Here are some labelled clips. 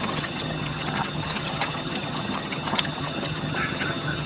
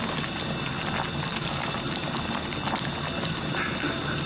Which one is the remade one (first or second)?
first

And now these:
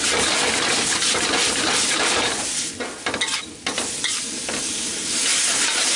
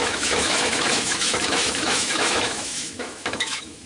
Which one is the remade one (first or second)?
second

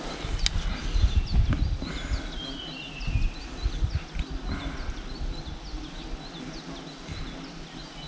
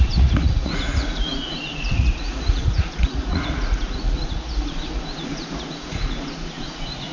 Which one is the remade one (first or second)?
second